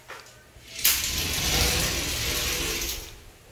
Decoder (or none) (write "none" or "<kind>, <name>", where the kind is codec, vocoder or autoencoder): none